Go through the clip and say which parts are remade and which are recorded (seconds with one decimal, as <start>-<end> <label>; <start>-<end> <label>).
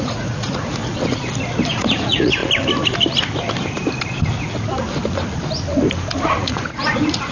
0.0-0.8 remade; 0.8-1.7 recorded; 1.7-2.4 remade; 2.4-6.4 recorded; 6.4-7.3 remade